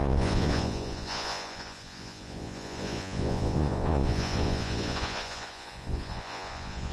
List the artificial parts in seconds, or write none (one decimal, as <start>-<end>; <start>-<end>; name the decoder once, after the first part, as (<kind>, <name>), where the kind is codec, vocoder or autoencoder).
0.0-6.9 (vocoder, Vocos)